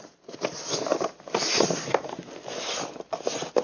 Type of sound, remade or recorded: recorded